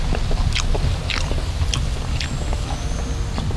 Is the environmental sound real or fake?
real